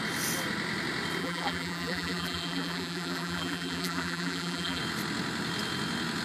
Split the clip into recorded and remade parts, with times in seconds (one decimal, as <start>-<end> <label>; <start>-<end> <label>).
0.0-1.2 recorded; 1.2-4.8 remade; 4.8-6.2 recorded